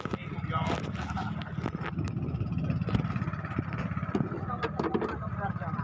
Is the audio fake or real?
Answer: real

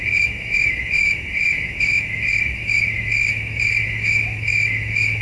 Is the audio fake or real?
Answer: fake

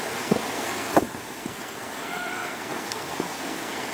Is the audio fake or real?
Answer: fake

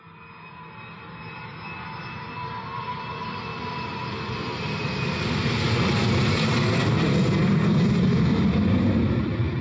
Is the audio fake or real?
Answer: real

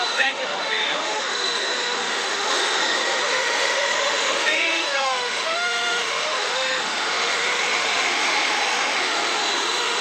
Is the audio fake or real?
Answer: fake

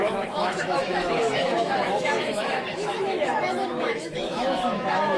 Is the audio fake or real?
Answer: fake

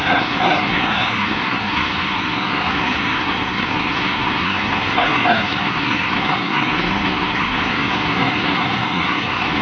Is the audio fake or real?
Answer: fake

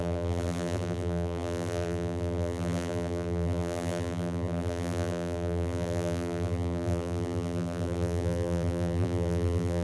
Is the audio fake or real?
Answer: fake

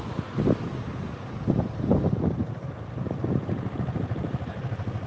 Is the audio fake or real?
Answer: real